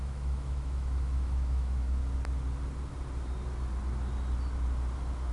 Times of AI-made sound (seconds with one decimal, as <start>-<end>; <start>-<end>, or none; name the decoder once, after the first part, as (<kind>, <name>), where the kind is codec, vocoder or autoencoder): 0.0-2.0 (autoencoder, DAC-VAE)